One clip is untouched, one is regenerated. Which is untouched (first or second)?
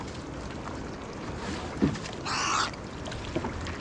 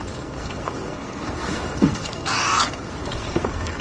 first